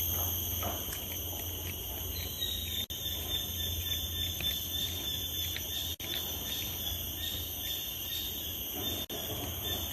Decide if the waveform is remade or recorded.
recorded